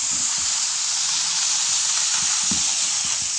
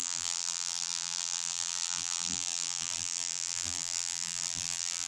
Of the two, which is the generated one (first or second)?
second